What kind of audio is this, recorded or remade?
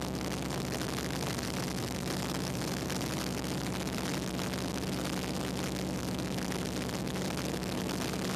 recorded